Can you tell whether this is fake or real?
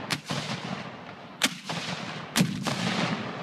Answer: real